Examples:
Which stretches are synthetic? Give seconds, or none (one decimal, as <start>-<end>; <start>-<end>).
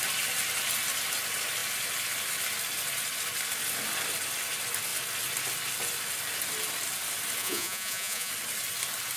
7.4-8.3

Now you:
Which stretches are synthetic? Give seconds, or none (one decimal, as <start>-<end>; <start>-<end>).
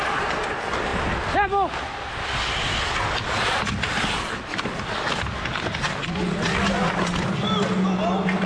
none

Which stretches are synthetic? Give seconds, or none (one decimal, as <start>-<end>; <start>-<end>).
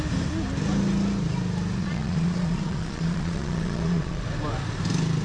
1.8-4.2